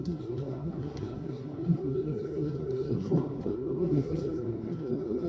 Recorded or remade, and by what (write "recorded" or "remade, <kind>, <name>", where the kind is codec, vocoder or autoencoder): remade, codec, SNAC